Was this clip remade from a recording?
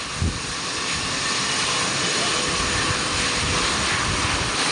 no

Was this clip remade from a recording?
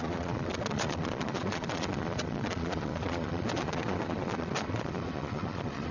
yes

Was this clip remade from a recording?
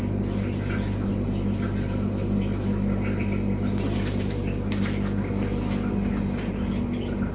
no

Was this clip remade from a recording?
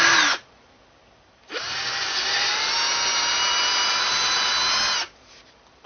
no